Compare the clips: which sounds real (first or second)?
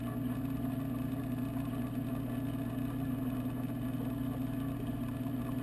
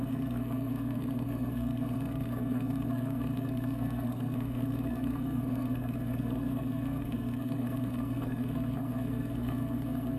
first